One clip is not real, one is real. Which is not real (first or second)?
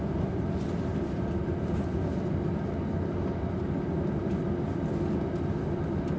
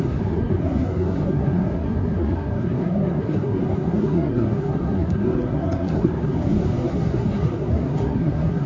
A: second